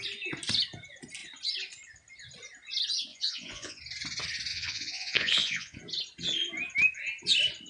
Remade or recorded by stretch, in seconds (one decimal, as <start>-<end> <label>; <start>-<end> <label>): 0.0-3.1 recorded; 3.1-3.8 remade; 3.8-4.5 recorded; 4.5-5.8 remade; 5.8-7.7 recorded